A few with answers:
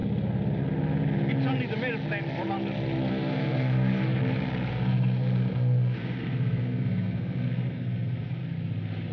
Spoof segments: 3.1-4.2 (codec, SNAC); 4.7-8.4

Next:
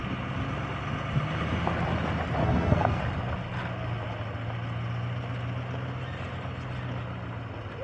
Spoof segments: 2.4-3.0 (codec, SNAC)

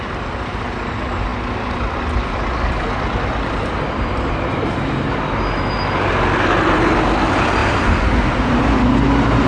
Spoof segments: none

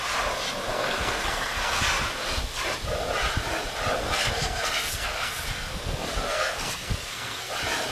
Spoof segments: 0.7-1.8 (codec, SNAC); 4.0-7.5

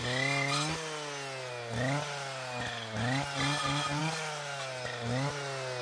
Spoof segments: none

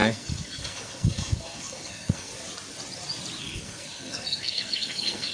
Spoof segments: 0.0-2.3 (codec, SNAC); 3.4-5.3

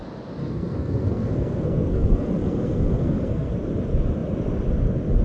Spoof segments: 0.4-3.5 (codec, SNAC)